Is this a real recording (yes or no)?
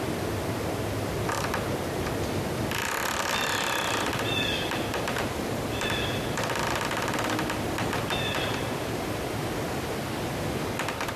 yes